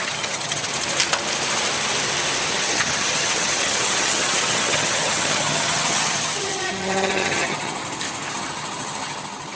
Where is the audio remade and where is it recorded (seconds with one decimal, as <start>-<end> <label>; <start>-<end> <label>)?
0.0-0.7 remade; 0.7-2.5 recorded; 2.5-7.8 remade; 7.8-8.3 recorded; 8.3-9.5 remade